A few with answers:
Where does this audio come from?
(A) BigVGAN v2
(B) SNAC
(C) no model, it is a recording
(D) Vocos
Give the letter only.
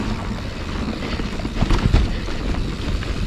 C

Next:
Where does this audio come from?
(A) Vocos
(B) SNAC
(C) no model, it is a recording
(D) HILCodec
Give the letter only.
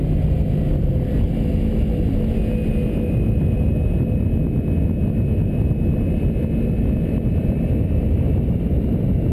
C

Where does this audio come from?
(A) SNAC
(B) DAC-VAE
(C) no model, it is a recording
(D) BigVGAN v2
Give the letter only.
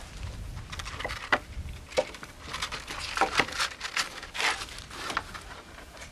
C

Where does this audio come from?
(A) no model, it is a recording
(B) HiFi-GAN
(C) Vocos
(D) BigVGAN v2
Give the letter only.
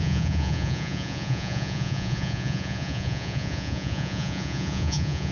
C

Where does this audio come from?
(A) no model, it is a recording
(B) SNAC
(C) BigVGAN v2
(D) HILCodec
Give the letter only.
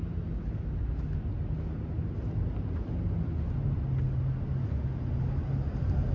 A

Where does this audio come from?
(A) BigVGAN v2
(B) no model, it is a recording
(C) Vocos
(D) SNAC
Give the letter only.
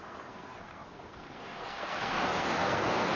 D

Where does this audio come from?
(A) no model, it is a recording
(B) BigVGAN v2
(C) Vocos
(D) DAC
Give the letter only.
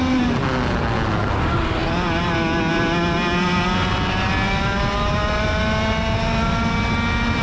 A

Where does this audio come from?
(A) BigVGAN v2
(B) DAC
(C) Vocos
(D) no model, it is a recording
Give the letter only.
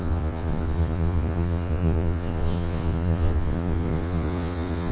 C